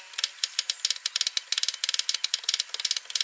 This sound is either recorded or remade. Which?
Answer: recorded